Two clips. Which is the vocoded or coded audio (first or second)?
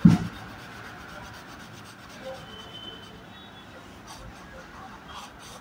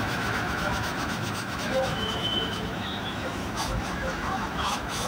second